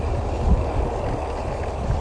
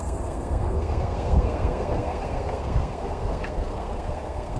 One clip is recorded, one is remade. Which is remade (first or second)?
second